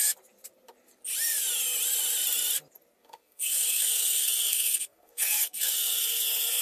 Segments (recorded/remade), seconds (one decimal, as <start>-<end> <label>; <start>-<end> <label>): 0.0-3.0 recorded; 3.0-6.6 remade